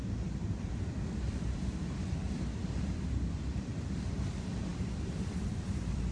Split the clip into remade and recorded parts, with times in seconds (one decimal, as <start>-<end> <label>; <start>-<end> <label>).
0.0-0.4 recorded; 0.4-4.1 remade; 4.1-4.7 recorded; 4.7-6.1 remade